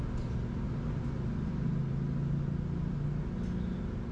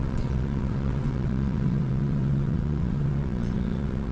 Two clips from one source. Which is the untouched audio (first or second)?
first